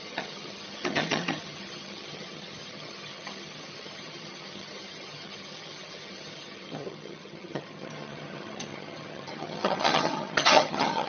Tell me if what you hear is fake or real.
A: fake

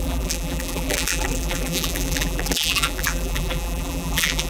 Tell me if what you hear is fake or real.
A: fake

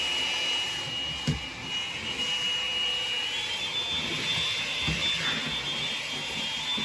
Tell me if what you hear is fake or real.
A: real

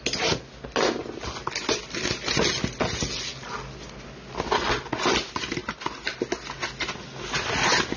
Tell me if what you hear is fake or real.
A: real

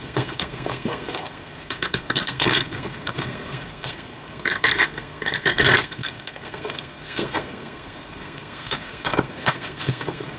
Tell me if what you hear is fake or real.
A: fake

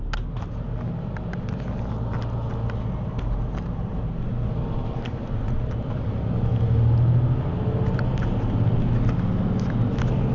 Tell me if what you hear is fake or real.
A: real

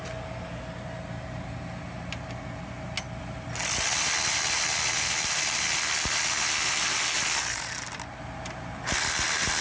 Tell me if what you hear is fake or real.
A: real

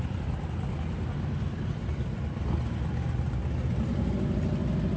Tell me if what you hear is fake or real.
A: real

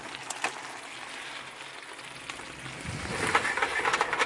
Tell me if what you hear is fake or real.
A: real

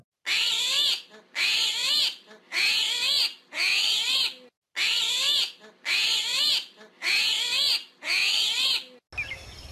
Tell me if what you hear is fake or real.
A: real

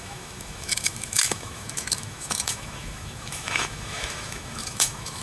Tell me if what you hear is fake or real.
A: fake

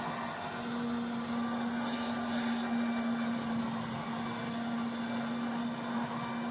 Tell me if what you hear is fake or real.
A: real